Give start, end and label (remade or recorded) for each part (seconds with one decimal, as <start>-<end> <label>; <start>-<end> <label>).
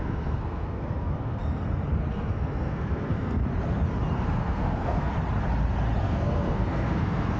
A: 0.0-1.4 remade; 1.4-2.1 recorded; 2.1-3.4 remade; 3.4-4.2 recorded; 4.2-5.1 remade; 5.1-6.0 recorded; 6.0-7.4 remade